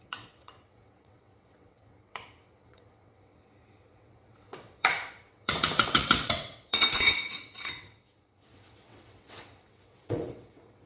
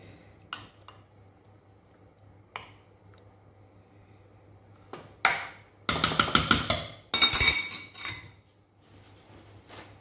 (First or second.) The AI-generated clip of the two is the first